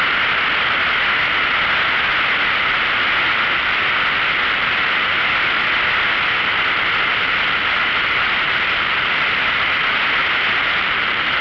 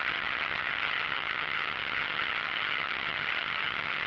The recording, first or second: first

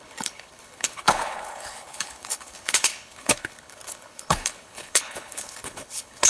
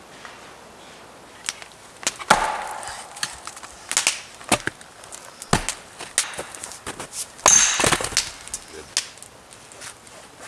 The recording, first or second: second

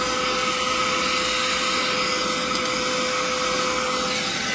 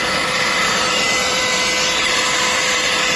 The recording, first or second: first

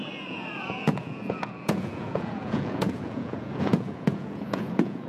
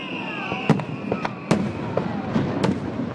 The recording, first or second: second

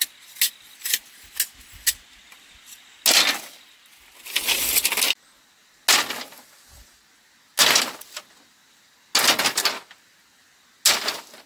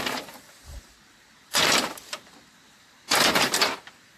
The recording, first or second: first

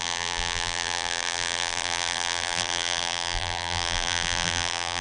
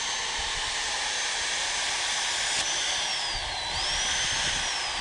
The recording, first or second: second